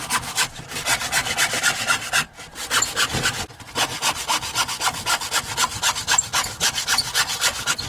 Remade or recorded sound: recorded